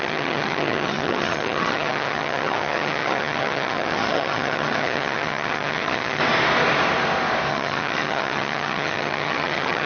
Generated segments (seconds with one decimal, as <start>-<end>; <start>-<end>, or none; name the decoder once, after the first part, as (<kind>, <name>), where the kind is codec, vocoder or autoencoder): 0.0-6.2 (vocoder, HiFi-GAN); 7.5-9.9